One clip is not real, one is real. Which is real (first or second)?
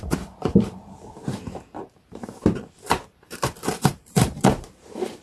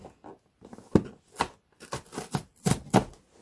second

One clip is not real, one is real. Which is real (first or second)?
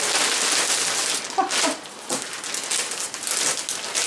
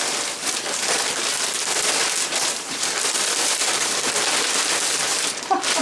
first